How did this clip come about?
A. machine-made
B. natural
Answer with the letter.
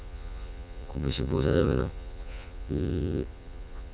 A